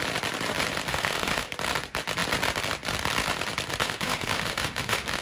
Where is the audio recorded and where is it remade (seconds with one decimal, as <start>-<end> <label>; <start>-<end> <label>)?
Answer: 0.0-0.9 recorded; 0.9-1.5 remade; 1.5-3.8 recorded; 3.8-5.2 remade